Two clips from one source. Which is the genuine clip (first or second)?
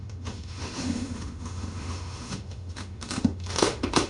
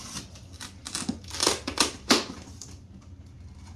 second